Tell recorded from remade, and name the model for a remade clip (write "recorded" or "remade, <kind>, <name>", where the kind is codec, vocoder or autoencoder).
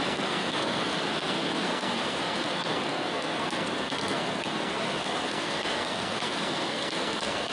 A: remade, codec, SNAC